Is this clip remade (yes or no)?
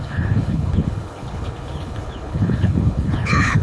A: yes